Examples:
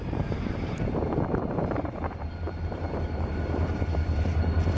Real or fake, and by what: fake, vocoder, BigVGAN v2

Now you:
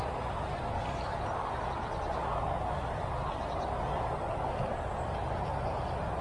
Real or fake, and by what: real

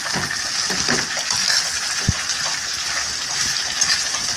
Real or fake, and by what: real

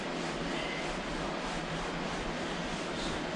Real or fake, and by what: real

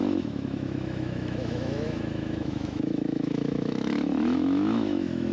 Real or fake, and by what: fake, autoencoder, DAC-VAE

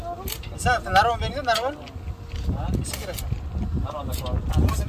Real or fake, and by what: real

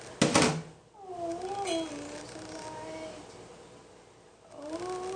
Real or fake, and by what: real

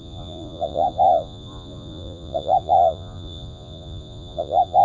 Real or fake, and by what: fake, vocoder, Vocos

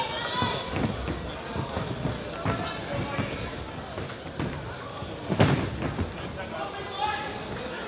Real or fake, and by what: real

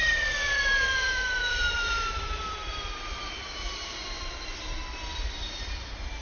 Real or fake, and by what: fake, vocoder, BigVGAN v2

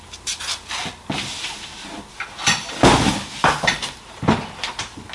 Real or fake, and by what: real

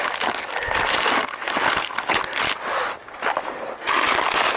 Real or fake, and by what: real